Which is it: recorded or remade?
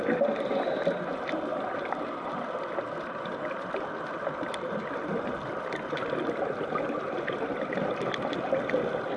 recorded